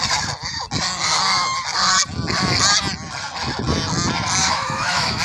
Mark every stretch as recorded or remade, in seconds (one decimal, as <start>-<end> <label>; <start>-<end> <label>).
0.0-4.4 recorded; 4.4-5.2 remade